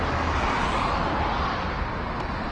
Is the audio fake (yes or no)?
no